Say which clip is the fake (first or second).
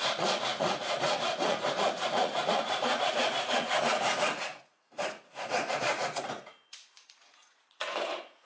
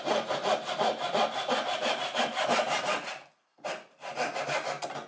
first